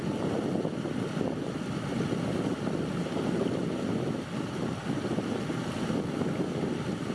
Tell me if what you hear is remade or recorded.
recorded